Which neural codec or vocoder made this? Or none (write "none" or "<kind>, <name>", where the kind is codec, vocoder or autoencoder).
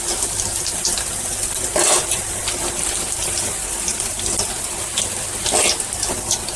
none